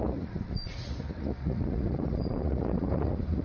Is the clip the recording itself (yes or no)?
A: no